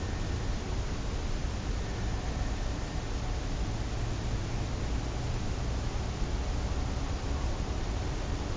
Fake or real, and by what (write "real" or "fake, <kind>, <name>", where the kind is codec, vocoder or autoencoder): real